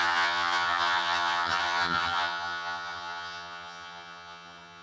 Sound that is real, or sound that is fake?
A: fake